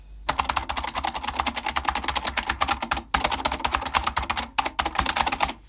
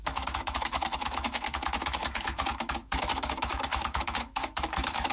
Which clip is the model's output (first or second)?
second